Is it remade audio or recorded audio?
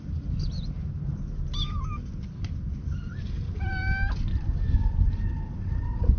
recorded